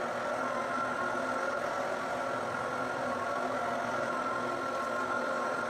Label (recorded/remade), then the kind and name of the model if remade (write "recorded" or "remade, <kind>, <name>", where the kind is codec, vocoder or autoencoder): recorded